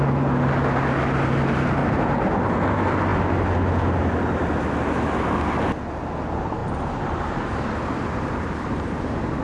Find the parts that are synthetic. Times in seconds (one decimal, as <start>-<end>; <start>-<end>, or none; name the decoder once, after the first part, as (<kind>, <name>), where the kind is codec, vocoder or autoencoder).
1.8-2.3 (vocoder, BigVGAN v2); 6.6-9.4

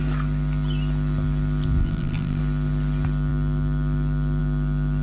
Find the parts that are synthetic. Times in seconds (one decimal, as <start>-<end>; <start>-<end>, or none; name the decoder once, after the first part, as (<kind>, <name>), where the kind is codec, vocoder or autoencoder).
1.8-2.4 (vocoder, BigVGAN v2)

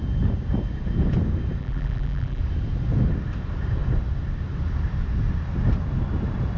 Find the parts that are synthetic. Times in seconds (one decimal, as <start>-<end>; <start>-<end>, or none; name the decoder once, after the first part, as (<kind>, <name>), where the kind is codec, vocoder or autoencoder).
1.6-2.4 (vocoder, BigVGAN v2)